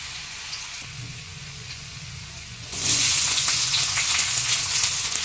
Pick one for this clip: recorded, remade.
remade